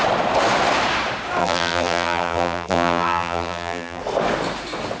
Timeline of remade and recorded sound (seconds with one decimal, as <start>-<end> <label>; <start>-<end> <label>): 0.0-1.4 recorded; 1.4-4.0 remade; 4.0-5.0 recorded